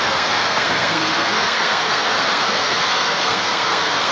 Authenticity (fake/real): fake